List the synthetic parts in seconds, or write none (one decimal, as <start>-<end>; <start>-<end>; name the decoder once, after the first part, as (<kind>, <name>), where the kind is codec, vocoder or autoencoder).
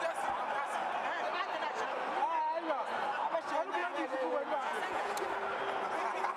3.8-5.1 (vocoder, Vocos)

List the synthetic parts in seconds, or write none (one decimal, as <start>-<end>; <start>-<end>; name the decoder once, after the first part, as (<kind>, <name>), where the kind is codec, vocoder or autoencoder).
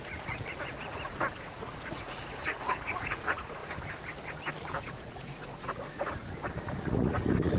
0.0-3.6 (vocoder, Vocos); 4.8-6.3; 6.8-7.6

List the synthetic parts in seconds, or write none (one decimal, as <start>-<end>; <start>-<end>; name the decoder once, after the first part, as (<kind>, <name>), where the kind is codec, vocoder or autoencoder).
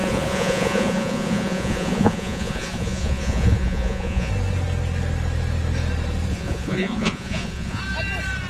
0.0-4.3 (vocoder, Vocos); 6.3-7.8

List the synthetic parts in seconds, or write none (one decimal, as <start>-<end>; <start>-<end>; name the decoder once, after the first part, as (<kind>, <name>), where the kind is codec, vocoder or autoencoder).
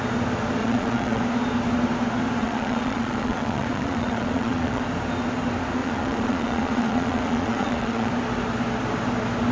0.6-1.2 (vocoder, Vocos); 2.4-4.8; 5.8-8.1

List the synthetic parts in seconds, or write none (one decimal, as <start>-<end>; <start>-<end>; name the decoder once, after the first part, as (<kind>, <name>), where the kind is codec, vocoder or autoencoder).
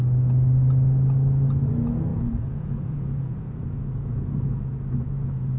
2.1-5.6 (vocoder, Vocos)